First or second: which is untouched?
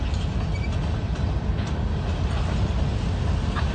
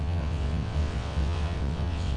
first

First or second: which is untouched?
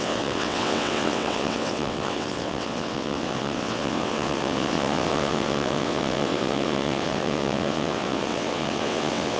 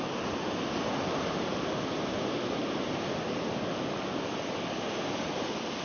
second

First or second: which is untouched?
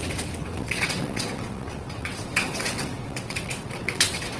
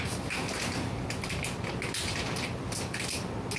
second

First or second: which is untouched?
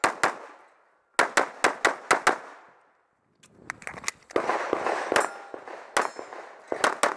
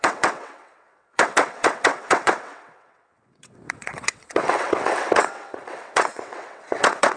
first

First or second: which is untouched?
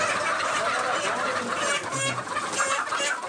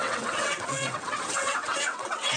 first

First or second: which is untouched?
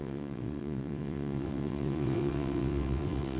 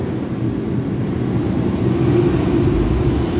second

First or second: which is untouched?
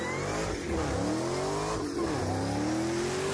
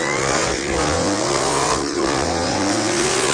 first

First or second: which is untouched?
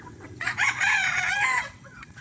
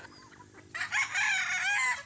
second